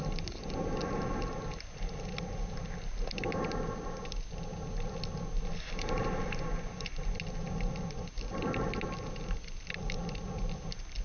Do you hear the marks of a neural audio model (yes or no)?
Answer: no